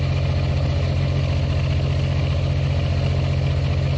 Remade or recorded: recorded